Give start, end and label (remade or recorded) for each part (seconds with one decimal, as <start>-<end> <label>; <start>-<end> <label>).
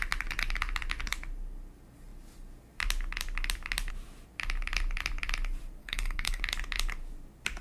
0.0-5.8 recorded; 5.8-6.4 remade; 6.4-7.6 recorded